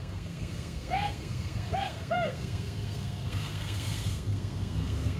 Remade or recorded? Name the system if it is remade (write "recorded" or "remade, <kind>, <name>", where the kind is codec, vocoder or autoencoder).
remade, codec, SNAC